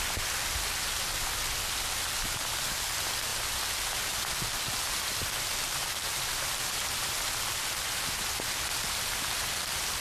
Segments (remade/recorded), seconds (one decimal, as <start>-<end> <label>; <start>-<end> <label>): 0.0-10.0 recorded